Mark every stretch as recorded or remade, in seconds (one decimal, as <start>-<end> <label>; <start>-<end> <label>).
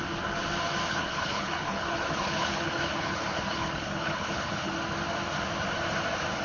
0.0-0.9 recorded; 0.9-4.7 remade; 4.7-6.4 recorded